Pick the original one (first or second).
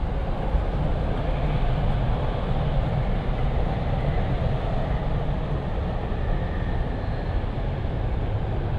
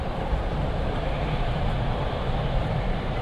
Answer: first